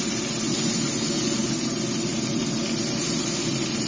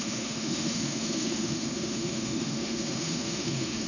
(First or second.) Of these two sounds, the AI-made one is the second